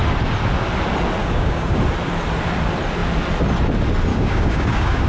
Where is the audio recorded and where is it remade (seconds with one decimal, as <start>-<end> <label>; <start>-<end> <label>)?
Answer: 0.0-1.2 recorded; 1.2-1.8 remade; 1.8-4.1 recorded; 4.1-5.1 remade